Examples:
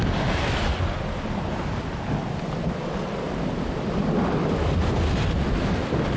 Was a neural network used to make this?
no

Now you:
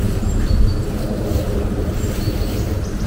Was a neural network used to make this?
yes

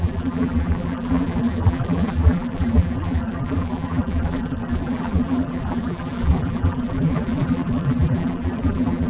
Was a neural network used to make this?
yes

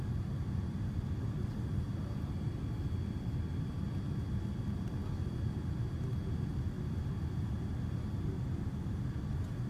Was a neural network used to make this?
no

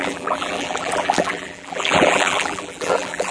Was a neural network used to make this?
yes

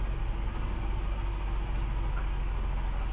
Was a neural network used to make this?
no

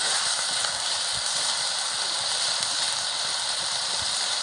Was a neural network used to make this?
yes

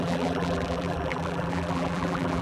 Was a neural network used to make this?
yes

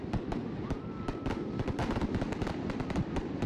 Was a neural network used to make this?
yes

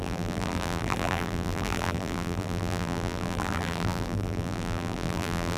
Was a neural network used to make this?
yes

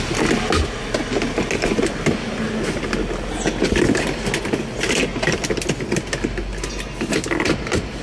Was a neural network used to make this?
no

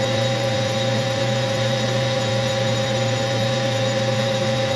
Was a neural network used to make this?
yes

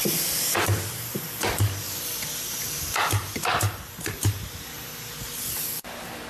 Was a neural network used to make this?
no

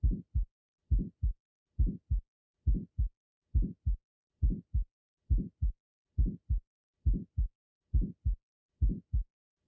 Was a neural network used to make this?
no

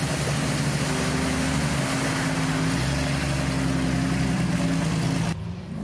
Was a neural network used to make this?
no